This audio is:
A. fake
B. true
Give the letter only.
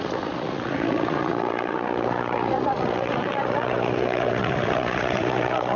A